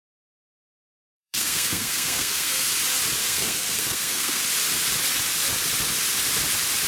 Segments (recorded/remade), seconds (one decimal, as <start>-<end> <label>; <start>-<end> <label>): 0.0-2.7 remade; 2.7-3.2 recorded; 3.2-4.4 remade; 4.4-6.9 recorded